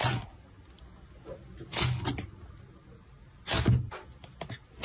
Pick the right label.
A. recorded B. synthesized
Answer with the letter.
A